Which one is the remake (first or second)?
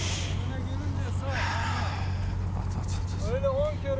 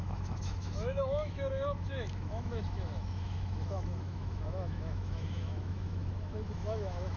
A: second